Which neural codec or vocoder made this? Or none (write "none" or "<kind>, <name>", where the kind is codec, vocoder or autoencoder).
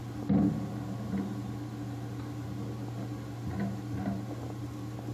none